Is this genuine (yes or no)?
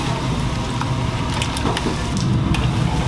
yes